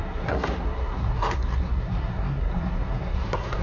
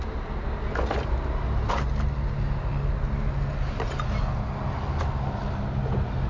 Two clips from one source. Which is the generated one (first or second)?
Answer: first